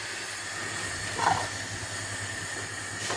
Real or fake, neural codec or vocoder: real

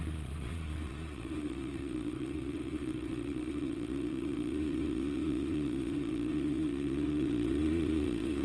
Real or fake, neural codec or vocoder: fake, vocoder, Vocos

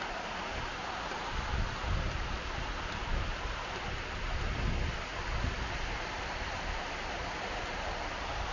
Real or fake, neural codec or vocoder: real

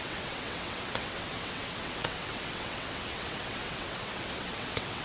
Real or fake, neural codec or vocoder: fake, vocoder, WaveNeXt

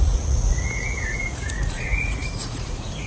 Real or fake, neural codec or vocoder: fake, vocoder, Vocos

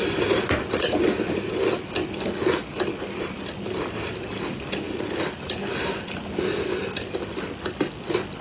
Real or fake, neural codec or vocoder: real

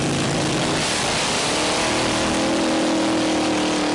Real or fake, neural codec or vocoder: real